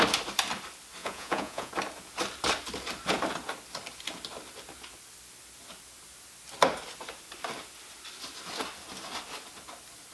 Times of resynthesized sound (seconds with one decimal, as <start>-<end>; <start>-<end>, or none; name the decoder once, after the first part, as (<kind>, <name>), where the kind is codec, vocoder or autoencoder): 1.0-1.7 (vocoder, Vocos)